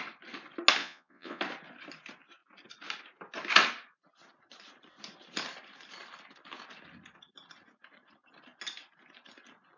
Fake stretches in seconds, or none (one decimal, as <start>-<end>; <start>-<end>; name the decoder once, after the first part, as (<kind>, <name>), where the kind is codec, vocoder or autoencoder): 0.8-1.4 (vocoder, Vocos)